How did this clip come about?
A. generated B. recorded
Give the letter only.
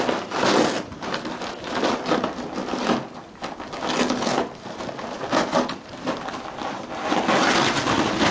B